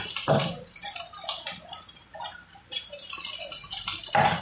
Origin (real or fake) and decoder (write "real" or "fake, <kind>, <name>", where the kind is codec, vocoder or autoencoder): real